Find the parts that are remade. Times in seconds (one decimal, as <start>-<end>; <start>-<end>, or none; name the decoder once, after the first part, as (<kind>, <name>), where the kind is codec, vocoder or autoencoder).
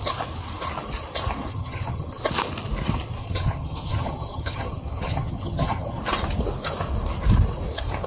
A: 1.5-2.2 (vocoder, HiFi-GAN); 3.2-6.0